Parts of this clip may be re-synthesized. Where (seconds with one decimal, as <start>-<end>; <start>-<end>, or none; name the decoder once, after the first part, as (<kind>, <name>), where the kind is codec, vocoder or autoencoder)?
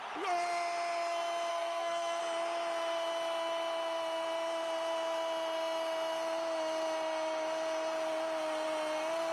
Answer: 1.5-2.2 (codec, SNAC)